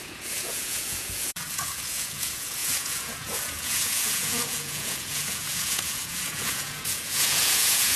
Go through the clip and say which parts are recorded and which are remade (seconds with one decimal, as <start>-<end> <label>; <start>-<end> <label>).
0.0-8.0 remade